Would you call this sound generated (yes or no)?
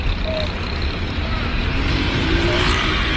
yes